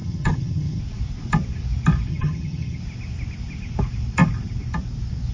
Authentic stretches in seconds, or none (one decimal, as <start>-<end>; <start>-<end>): 0.8-2.1; 2.8-5.3